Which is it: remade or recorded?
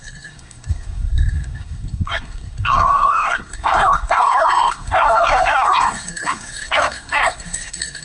remade